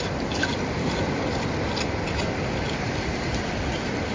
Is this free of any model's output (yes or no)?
yes